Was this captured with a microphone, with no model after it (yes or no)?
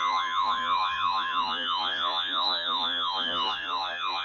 no